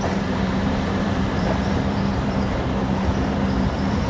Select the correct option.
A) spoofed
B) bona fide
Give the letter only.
A